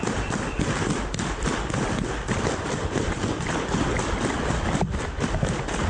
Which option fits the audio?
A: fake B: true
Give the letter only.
B